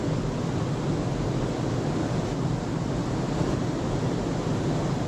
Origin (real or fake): real